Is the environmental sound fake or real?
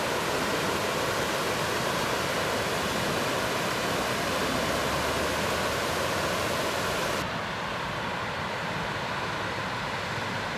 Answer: fake